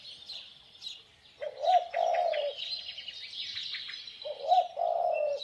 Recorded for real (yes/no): yes